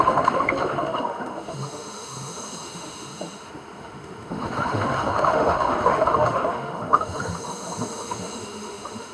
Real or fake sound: fake